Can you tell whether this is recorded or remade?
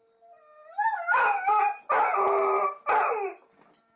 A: recorded